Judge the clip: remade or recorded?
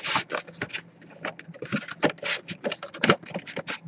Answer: recorded